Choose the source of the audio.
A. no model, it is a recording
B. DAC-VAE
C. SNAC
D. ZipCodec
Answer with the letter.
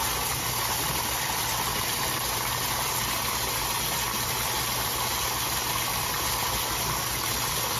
A